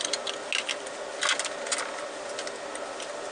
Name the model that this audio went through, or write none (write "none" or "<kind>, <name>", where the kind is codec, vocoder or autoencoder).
none